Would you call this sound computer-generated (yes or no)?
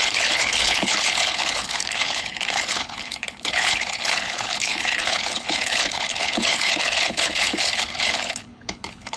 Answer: yes